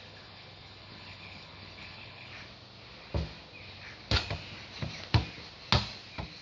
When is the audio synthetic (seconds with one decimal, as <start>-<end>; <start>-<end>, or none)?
0.0-2.3